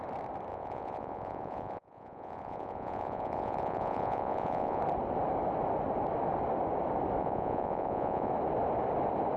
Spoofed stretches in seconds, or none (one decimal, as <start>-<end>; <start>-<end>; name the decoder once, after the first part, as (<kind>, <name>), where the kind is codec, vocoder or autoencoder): 0.5-4.8 (vocoder, Vocos); 7.2-8.3